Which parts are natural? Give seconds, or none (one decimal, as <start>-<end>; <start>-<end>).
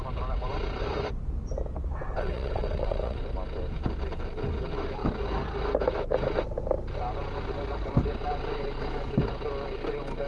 0.0-1.9; 3.2-10.3